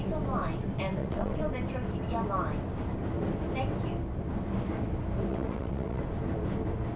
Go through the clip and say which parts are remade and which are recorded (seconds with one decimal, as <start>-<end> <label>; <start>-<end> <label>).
0.0-1.0 recorded; 1.0-1.5 remade; 1.5-5.3 recorded; 5.3-6.0 remade; 6.0-7.0 recorded